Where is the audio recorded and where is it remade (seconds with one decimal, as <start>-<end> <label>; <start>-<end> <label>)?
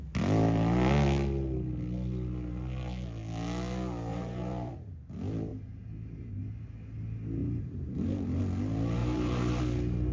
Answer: 0.0-4.1 recorded; 4.1-4.7 remade; 4.7-5.5 recorded; 5.5-6.4 remade; 6.4-7.4 recorded; 7.4-8.4 remade; 8.4-9.0 recorded; 9.0-9.6 remade; 9.6-10.1 recorded